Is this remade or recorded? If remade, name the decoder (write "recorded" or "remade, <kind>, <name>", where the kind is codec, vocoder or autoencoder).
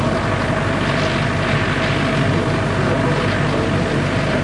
recorded